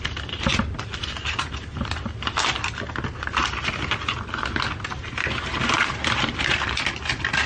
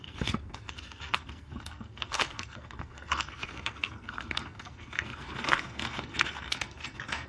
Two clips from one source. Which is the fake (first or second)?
second